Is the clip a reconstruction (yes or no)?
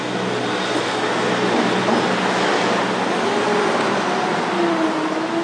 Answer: no